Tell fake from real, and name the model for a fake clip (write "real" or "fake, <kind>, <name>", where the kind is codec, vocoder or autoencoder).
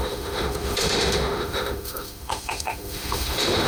fake, autoencoder, DAC-VAE